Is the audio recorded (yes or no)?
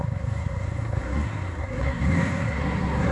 no